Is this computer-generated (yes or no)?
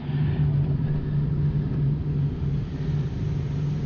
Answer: no